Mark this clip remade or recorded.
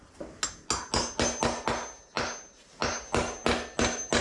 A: recorded